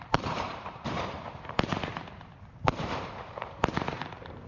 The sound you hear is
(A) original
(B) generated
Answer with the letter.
B